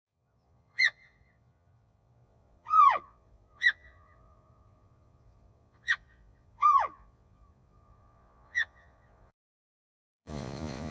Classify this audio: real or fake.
fake